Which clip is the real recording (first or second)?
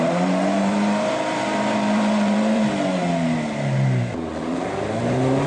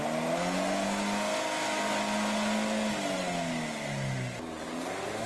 second